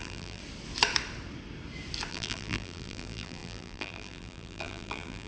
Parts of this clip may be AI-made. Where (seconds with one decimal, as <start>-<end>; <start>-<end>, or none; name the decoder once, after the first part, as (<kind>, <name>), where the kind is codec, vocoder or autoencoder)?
0.0-0.4 (vocoder, BigVGAN v2); 2.1-5.3